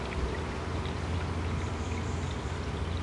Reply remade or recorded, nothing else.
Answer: recorded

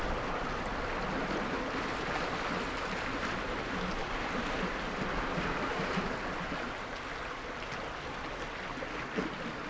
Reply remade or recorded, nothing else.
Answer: recorded